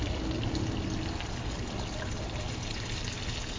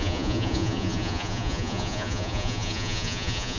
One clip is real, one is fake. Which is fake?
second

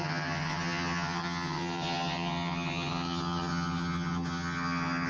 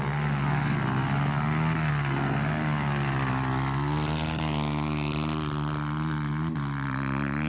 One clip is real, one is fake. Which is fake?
first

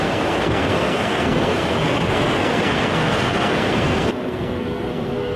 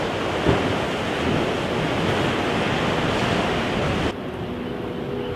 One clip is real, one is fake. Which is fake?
first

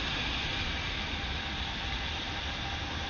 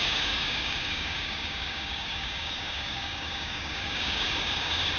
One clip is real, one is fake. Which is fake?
second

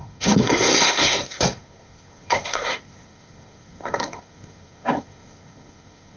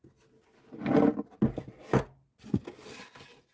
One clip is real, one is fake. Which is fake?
first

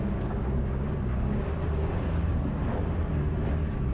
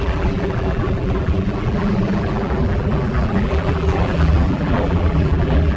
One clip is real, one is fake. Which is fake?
second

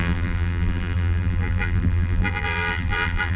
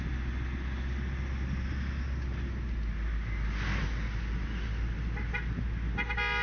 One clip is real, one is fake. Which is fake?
first